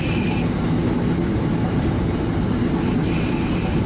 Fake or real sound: real